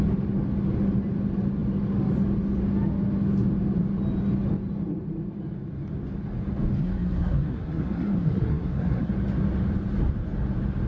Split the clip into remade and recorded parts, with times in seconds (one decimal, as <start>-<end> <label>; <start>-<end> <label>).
0.0-6.8 recorded; 6.8-9.1 remade; 9.1-10.9 recorded